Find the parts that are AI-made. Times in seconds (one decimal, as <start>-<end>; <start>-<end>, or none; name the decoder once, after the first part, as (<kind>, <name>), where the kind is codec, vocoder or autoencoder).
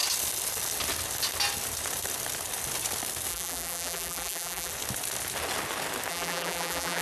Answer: 3.3-4.7 (vocoder, BigVGAN v2); 6.1-7.0